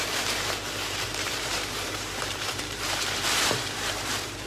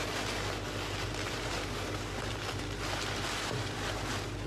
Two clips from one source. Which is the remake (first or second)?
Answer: first